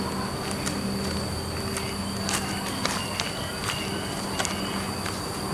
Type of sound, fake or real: real